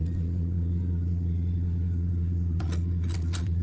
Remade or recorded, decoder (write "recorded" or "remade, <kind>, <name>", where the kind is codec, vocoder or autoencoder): remade, vocoder, Vocos